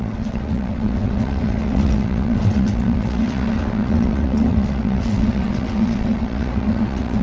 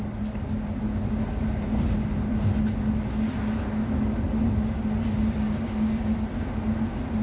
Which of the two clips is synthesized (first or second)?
first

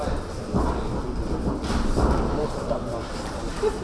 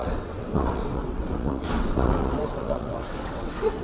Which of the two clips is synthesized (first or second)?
second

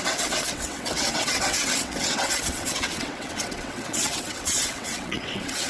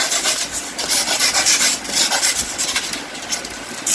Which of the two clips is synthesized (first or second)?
first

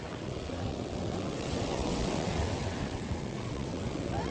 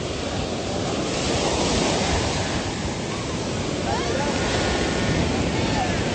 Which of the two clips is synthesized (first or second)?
first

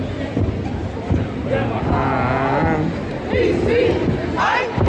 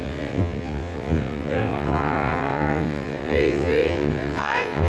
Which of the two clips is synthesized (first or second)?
second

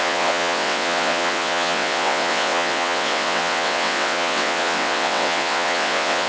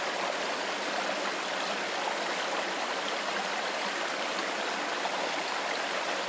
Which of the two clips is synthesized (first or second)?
first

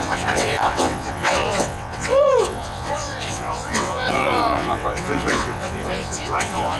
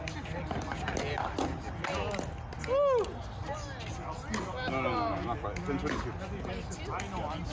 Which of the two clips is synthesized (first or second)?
first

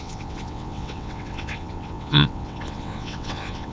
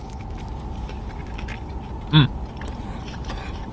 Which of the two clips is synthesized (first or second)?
first